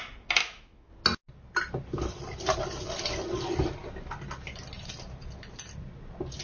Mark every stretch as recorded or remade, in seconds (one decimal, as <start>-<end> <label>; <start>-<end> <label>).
0.0-0.4 recorded; 0.4-0.9 remade; 0.9-6.4 recorded